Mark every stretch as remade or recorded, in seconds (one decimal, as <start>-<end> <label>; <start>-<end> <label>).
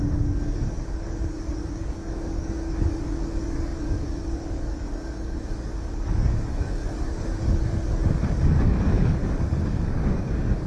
0.0-10.7 remade